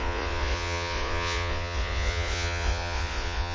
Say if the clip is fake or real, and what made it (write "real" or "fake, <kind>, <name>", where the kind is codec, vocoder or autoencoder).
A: fake, vocoder, Vocos